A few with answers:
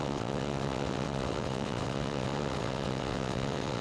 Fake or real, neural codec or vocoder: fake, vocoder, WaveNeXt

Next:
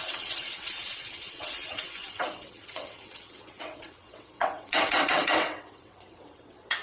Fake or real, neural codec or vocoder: fake, vocoder, WaveNeXt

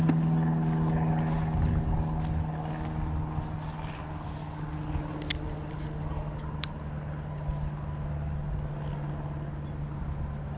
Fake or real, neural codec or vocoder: real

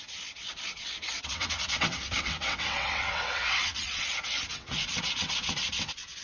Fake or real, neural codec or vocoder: fake, vocoder, WaveNeXt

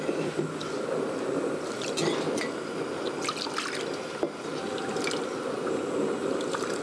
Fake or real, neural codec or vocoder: real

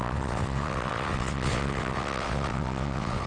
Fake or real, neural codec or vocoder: fake, vocoder, WaveNeXt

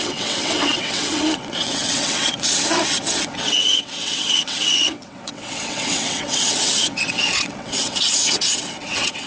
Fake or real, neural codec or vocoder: fake, vocoder, WaveNeXt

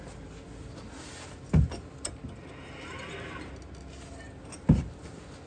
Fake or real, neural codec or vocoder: real